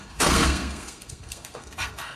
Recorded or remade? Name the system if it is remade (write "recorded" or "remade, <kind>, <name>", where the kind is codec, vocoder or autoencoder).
remade, codec, SNAC